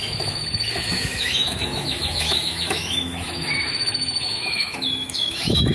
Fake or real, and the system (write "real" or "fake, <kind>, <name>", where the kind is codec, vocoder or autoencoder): fake, autoencoder, DAC-VAE